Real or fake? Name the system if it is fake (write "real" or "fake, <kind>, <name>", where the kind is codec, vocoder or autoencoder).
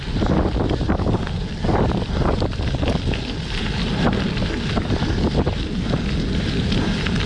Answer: real